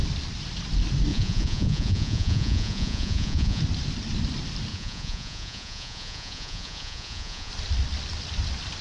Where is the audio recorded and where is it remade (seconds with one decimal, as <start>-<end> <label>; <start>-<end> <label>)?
0.0-1.1 recorded; 1.1-3.6 remade; 3.6-4.7 recorded; 4.7-7.5 remade; 7.5-8.8 recorded